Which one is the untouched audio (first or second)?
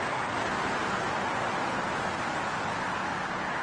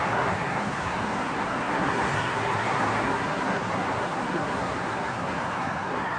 first